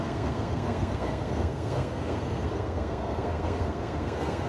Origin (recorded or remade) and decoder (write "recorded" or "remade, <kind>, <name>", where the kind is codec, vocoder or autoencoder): remade, codec, SNAC